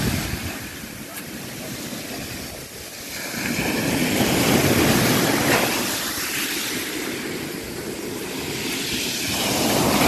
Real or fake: real